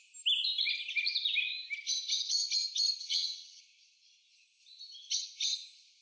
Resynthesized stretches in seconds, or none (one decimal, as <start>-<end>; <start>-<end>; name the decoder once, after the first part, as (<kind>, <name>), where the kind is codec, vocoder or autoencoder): 3.0-3.6 (vocoder, HiFi-GAN)